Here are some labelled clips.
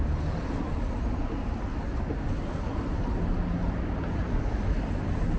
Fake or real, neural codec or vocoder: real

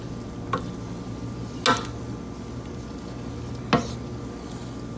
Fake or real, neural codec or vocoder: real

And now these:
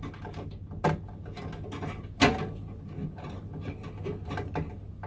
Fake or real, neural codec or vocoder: real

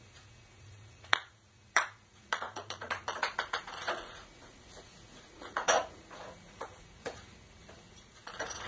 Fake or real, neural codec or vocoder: fake, vocoder, Vocos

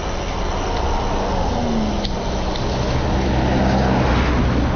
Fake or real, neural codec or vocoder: real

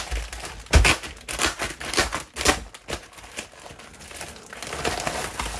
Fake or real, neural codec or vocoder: real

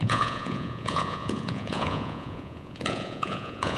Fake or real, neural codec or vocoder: fake, vocoder, Vocos